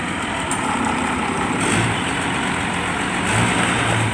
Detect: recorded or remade recorded